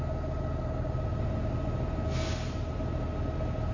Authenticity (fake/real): real